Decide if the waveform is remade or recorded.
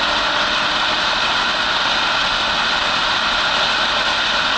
recorded